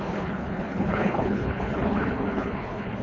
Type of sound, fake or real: fake